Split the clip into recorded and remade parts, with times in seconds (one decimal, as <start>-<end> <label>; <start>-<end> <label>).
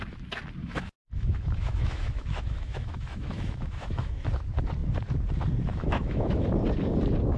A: 0.0-0.6 recorded; 0.6-4.3 remade; 4.3-5.7 recorded; 5.7-6.4 remade; 6.4-7.4 recorded